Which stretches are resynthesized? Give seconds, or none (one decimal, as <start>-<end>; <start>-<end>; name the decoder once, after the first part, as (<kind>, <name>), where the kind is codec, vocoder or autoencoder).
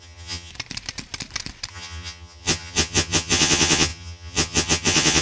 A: 0.0-0.5 (vocoder, HiFi-GAN); 1.7-5.2